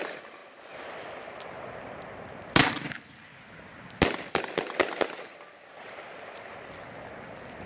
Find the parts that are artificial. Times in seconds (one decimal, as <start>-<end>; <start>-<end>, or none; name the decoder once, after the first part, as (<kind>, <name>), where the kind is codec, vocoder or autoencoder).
none